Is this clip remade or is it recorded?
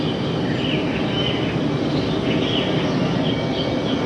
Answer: recorded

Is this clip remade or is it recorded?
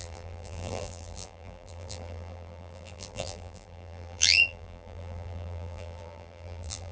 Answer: remade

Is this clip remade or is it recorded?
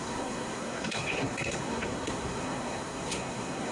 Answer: remade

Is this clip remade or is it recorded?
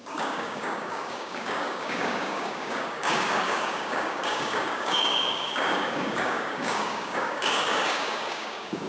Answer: remade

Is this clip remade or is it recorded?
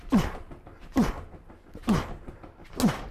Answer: recorded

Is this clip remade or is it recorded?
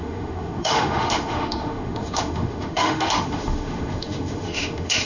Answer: remade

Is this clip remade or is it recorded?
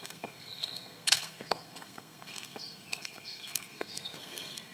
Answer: remade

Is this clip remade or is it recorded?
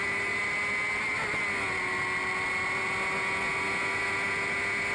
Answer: recorded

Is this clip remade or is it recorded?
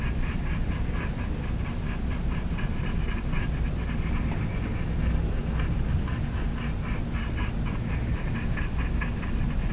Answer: recorded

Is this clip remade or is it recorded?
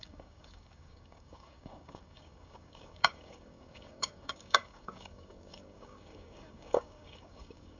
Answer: remade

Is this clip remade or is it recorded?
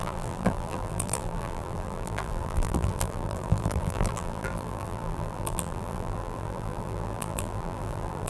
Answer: remade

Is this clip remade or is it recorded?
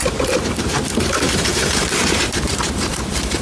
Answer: remade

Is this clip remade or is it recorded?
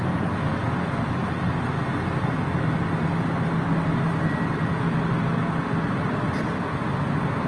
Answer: recorded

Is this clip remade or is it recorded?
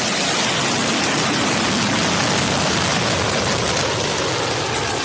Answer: recorded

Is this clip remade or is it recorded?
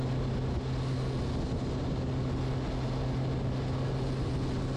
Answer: recorded